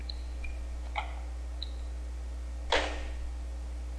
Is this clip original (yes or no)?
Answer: yes